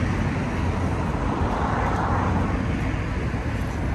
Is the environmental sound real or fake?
real